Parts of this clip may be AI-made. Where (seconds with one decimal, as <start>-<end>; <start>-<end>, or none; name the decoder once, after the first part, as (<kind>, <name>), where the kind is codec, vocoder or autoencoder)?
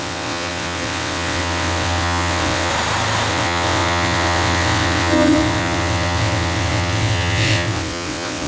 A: 0.0-2.7 (vocoder, WaveNeXt); 3.3-8.5